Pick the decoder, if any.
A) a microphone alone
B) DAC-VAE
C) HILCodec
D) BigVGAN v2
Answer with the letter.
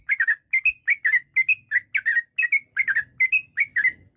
A